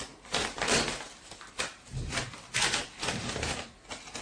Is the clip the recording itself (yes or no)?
yes